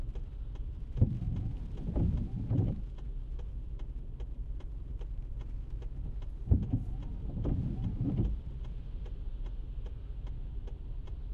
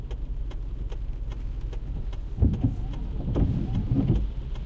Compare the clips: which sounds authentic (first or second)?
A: second